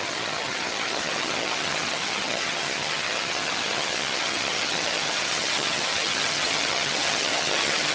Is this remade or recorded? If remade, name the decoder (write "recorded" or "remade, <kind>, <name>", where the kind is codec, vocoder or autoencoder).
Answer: remade, vocoder, HiFi-GAN